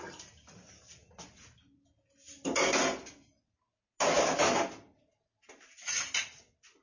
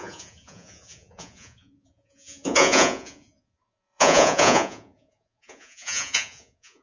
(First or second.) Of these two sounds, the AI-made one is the second